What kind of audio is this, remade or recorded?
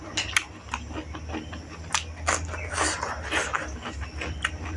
recorded